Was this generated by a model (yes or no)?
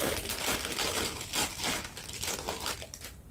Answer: no